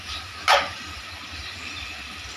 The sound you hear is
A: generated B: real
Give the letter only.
B